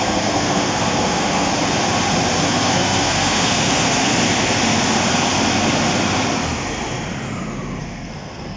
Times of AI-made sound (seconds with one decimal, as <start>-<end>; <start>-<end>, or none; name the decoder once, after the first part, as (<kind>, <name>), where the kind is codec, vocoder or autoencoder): 0.0-1.5 (codec, SNAC); 2.4-4.1; 7.8-8.6